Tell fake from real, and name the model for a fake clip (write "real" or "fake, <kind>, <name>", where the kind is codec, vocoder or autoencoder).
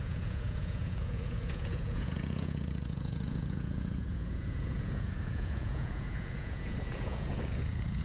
fake, vocoder, Vocos